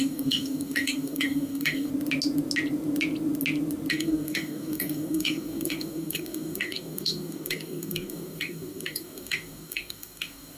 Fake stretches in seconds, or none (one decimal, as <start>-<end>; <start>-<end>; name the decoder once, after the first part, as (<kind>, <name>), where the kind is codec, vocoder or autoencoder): 0.0-1.9 (codec, DAC); 3.9-10.6